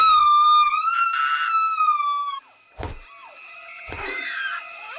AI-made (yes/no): no